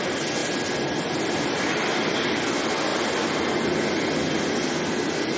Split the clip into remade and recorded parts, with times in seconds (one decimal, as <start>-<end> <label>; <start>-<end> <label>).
0.0-0.4 recorded; 0.4-2.1 remade; 2.1-5.4 recorded